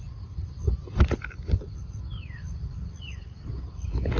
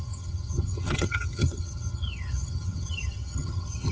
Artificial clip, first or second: second